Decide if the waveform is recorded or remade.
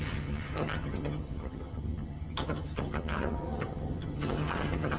remade